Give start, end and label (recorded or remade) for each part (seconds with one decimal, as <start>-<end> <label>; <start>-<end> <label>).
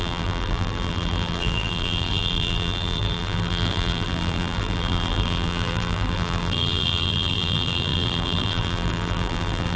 0.0-9.8 remade